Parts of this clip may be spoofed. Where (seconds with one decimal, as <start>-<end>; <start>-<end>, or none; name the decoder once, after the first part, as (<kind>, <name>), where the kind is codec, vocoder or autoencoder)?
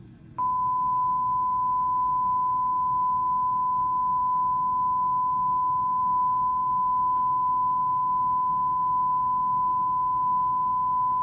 none